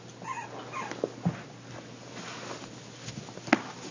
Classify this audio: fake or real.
real